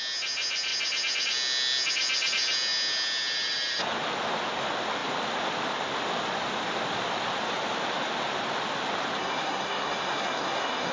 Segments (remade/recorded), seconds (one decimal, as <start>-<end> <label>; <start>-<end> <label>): 0.0-9.2 recorded; 9.2-10.9 remade